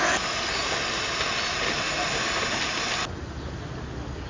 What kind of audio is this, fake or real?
real